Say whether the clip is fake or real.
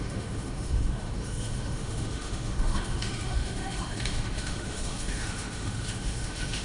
fake